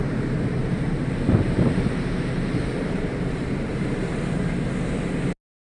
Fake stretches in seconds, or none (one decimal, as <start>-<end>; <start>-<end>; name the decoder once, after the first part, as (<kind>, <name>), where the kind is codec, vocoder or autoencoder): 0.6-4.1 (vocoder, BigVGAN v2)